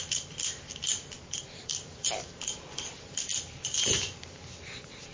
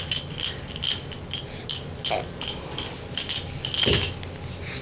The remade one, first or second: first